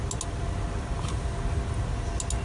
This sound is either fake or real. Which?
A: real